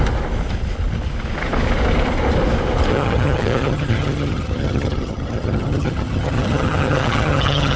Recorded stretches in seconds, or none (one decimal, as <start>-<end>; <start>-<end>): 0.0-2.9